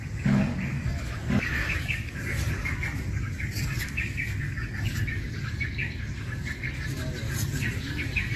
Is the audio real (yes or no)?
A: no